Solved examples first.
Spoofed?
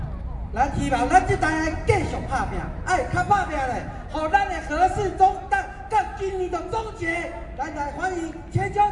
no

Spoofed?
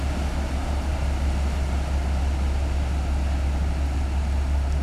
no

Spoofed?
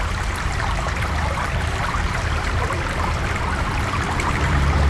yes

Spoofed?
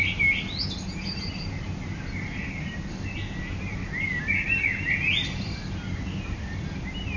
no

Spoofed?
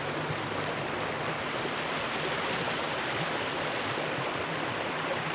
no